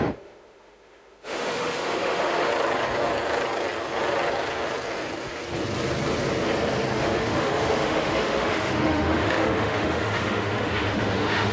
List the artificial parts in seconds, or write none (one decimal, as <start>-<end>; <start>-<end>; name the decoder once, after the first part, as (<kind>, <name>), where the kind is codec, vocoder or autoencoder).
0.0-2.5 (autoencoder, DAC-VAE); 7.0-11.5